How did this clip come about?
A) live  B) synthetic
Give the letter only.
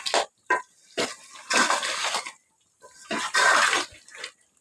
A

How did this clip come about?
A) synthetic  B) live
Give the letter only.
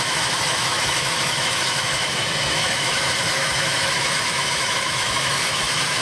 A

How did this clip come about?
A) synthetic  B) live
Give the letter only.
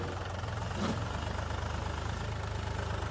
B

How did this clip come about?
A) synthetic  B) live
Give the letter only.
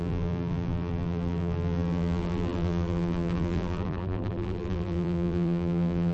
A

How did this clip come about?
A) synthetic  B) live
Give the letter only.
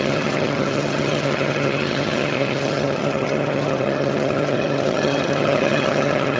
A